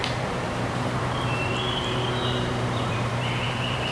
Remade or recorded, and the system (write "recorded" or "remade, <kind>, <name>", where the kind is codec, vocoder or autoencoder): remade, vocoder, BigVGAN v2